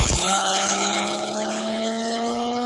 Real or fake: fake